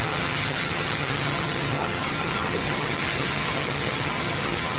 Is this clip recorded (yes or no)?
no